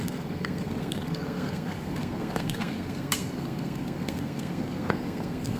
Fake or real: fake